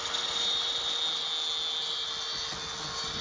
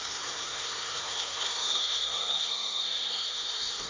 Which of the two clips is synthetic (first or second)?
second